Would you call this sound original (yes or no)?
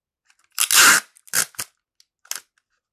yes